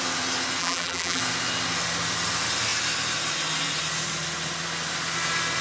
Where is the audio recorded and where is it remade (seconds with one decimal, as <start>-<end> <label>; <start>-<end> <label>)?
0.0-0.6 recorded; 0.6-1.2 remade; 1.2-5.6 recorded